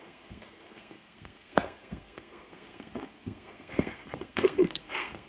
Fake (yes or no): yes